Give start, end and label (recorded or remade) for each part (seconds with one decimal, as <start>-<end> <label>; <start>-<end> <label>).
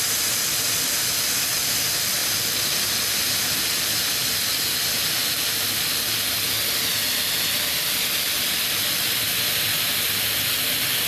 0.0-2.2 remade; 2.2-2.7 recorded; 2.7-4.0 remade; 4.0-8.7 recorded; 8.7-11.1 remade